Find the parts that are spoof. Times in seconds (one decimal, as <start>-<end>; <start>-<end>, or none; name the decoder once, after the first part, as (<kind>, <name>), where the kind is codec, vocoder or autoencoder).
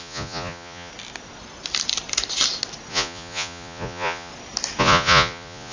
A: 0.0-0.9 (vocoder, Vocos); 2.9-4.3; 4.8-5.7